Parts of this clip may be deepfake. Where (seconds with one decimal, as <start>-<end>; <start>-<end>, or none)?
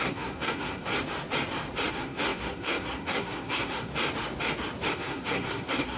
0.0-0.9; 1.9-3.9; 4.9-6.0